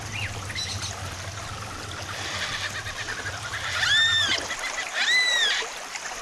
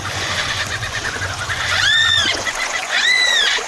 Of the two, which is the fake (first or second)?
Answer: second